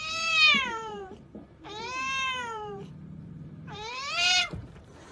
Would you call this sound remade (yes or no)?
yes